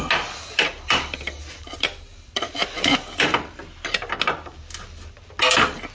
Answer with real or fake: real